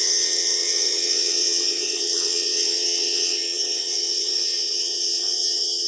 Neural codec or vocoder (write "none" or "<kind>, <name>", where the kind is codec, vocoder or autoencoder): vocoder, WaveNeXt